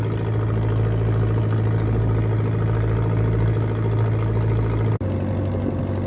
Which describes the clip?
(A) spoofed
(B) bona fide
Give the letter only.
B